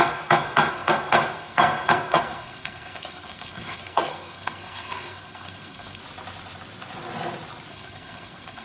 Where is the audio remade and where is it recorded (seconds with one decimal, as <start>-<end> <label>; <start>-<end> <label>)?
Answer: 0.0-6.0 remade; 6.0-7.7 recorded; 7.7-8.6 remade